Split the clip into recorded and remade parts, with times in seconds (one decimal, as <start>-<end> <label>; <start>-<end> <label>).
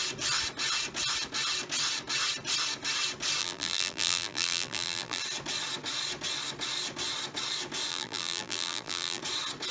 0.0-3.4 recorded; 3.4-5.2 remade; 5.2-7.9 recorded; 7.9-9.2 remade; 9.2-9.7 recorded